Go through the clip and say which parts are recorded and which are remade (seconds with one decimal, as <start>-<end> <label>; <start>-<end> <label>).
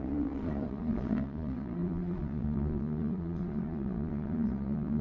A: 0.0-5.0 remade